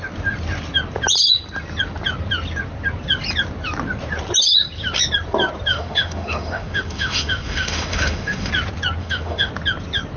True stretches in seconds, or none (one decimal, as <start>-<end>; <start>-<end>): 0.0-5.7; 8.5-9.0; 9.5-10.2